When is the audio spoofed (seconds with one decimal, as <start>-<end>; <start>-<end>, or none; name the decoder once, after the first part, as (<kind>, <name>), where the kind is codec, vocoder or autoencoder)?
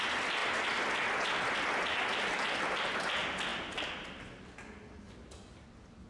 none